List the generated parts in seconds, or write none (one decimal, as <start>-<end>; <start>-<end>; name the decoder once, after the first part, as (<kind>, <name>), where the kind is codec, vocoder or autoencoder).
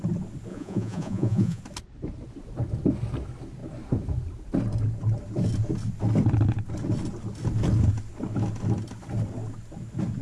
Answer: 0.5-1.6 (vocoder, Vocos)